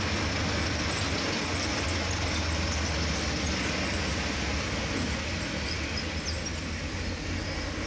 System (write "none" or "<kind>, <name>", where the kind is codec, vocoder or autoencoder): none